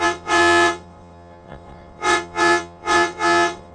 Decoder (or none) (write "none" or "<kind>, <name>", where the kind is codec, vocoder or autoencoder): vocoder, WaveNeXt